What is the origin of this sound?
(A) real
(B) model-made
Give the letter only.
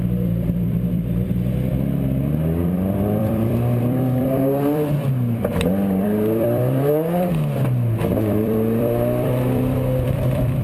B